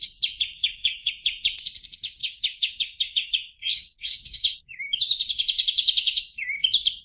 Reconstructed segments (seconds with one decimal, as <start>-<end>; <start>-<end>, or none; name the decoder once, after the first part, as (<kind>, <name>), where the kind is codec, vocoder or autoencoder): 0.6-1.1 (codec, DAC); 2.2-6.4